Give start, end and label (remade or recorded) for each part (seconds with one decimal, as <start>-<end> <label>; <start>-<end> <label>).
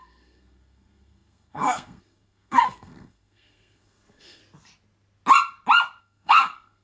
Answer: 0.0-4.4 remade; 4.4-6.0 recorded; 6.0-6.8 remade